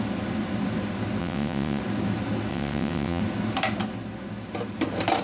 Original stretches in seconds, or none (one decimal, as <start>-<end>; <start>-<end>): 0.0-1.2; 1.8-2.5; 3.2-5.2